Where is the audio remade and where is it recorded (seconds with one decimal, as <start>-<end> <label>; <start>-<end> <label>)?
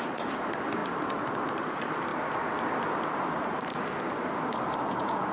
0.0-0.8 remade; 0.8-1.4 recorded; 1.4-2.1 remade; 2.1-4.1 recorded; 4.1-5.3 remade